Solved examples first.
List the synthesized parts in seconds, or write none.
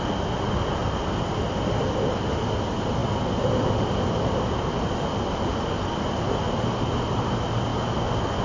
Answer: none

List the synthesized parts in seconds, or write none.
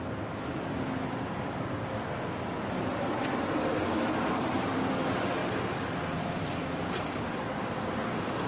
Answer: none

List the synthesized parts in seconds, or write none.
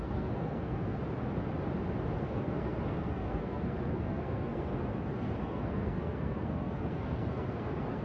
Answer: 0.0-1.0 (codec, SNAC); 2.2-8.0